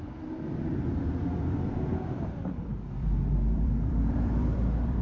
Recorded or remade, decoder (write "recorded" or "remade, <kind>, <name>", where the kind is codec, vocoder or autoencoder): remade, vocoder, BigVGAN v2